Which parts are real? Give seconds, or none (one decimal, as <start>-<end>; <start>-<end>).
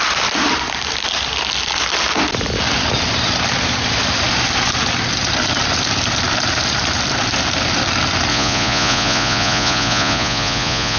0.0-8.3